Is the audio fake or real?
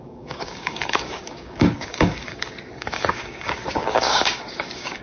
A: fake